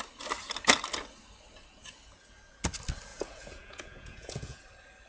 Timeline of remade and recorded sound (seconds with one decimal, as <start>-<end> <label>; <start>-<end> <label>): 0.0-3.1 recorded; 3.1-4.6 remade; 4.6-5.1 recorded